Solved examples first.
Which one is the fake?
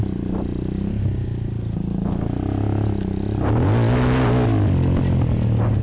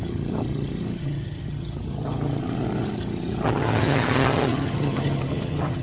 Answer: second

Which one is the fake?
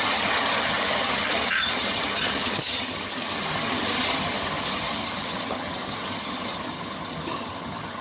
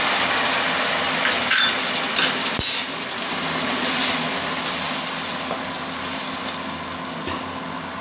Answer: first